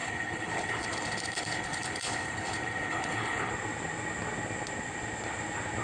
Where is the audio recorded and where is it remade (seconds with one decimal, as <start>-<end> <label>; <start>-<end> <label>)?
0.0-3.5 remade; 3.5-5.8 recorded